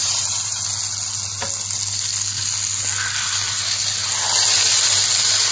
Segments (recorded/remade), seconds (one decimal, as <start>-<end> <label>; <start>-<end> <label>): 0.0-0.6 remade; 0.6-5.5 recorded

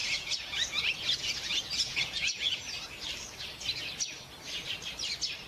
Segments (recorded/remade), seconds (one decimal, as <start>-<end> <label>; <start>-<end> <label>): 0.0-2.6 remade; 2.6-5.5 recorded

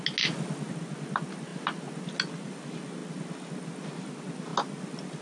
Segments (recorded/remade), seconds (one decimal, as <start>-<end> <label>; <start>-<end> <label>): 0.0-5.2 recorded